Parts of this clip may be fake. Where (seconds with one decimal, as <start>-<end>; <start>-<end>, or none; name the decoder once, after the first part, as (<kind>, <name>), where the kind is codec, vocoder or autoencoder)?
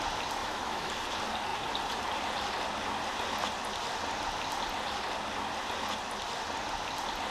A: 0.4-0.9 (autoencoder, DAC-VAE)